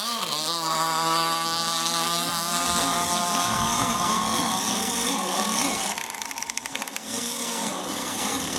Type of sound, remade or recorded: remade